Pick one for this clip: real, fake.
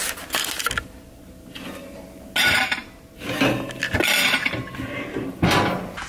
real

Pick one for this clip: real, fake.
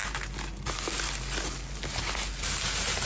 real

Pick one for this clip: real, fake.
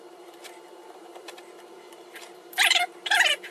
fake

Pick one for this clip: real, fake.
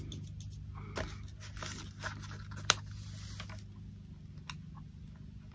real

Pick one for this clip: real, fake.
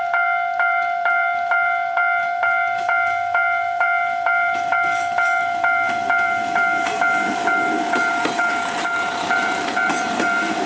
fake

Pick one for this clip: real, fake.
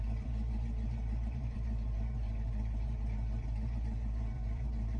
fake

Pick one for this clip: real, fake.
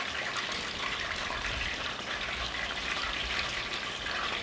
real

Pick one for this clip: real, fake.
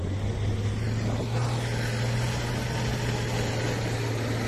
real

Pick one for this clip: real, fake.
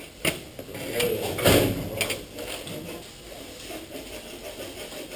real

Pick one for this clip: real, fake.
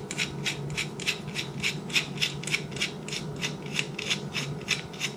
real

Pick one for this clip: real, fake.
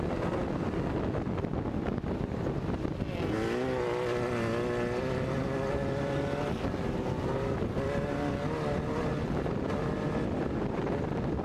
real